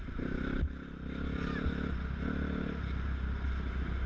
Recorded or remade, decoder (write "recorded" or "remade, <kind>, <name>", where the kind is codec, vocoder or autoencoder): recorded